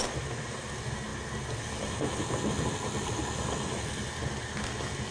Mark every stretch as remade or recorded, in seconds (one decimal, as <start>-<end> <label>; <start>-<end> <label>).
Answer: 0.0-5.1 recorded